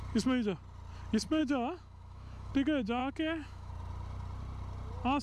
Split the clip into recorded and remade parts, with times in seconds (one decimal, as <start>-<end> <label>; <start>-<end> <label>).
0.0-1.4 recorded; 1.4-2.5 remade; 2.5-3.0 recorded; 3.0-3.7 remade; 3.7-5.2 recorded